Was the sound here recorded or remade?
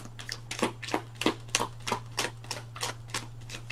recorded